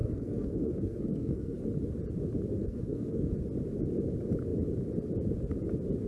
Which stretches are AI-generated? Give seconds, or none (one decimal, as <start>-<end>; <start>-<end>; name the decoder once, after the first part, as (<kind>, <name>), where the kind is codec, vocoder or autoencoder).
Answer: 0.0-1.6 (codec, SNAC); 2.6-3.3